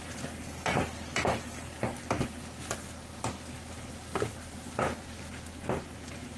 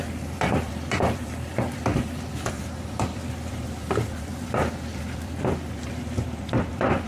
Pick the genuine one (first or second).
first